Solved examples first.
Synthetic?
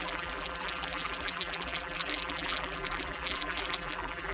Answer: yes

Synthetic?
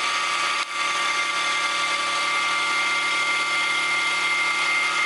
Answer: no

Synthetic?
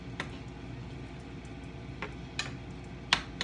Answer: no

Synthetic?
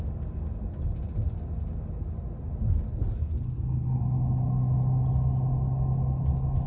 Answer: no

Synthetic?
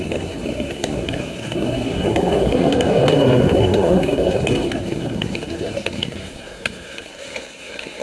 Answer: yes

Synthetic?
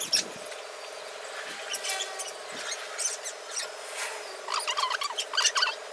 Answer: no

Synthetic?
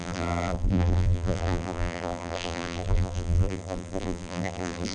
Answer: yes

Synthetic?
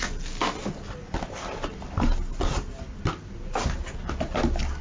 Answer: no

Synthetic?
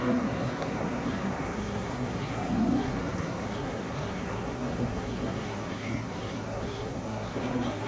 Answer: yes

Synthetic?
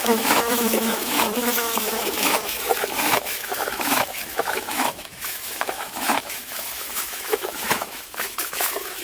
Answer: yes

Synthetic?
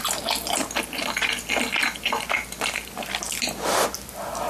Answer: no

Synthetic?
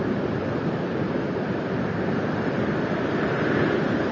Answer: yes